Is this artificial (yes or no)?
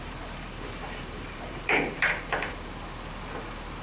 yes